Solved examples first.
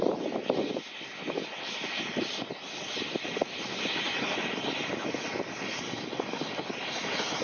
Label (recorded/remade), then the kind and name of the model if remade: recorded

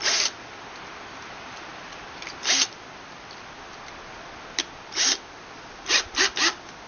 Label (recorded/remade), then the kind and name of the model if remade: recorded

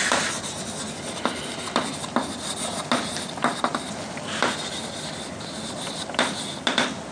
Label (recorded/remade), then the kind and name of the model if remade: recorded